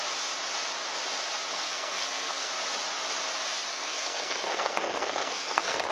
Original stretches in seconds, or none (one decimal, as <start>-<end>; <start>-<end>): 0.0-1.5; 2.5-3.7